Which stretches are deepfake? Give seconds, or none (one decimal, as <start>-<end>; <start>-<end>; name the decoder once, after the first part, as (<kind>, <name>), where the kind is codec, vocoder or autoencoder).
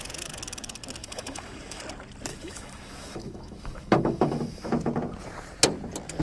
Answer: 1.0-1.8 (autoencoder, DAC-VAE); 2.3-4.7